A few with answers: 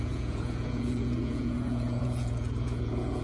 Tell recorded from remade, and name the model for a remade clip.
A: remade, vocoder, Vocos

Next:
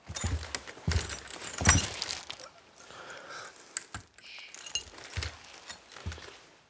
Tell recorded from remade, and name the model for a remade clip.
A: recorded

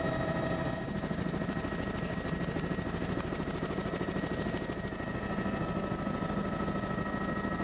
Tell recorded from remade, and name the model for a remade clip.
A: recorded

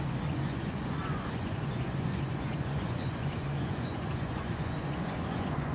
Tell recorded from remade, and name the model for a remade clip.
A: remade, vocoder, Vocos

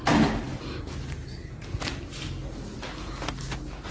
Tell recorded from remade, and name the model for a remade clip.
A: recorded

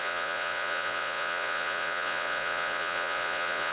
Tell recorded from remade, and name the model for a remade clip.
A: remade, vocoder, Vocos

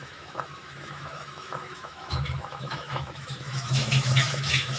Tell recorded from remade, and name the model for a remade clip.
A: remade, autoencoder, DAC-VAE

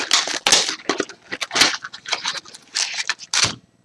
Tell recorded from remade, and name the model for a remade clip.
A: recorded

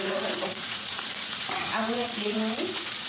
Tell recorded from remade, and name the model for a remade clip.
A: remade, vocoder, Vocos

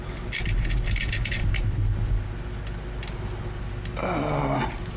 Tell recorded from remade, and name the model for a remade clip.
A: recorded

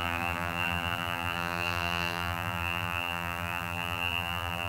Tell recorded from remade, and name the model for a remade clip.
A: remade, vocoder, BigVGAN v2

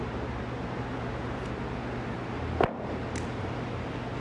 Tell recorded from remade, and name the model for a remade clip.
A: recorded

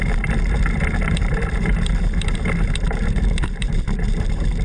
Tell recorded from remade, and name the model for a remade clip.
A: remade, vocoder, BigVGAN v2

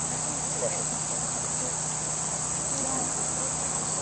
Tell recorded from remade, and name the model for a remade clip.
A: recorded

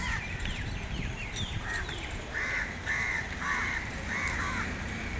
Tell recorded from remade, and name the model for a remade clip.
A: remade, vocoder, BigVGAN v2